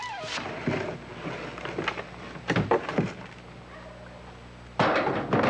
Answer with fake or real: real